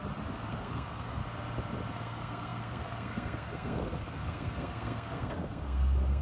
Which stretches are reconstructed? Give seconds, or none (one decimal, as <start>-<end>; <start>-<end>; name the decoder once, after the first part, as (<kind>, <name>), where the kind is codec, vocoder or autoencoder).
0.5-1.2 (codec, SNAC); 1.9-6.2

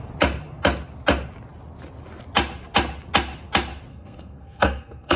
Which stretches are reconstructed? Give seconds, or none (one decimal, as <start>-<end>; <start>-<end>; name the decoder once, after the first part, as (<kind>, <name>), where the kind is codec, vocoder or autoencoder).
3.9-5.2 (codec, SNAC)

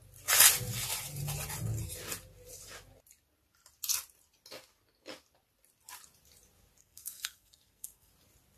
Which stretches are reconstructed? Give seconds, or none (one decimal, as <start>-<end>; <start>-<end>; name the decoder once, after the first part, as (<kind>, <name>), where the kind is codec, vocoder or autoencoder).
6.8-8.1 (codec, SNAC)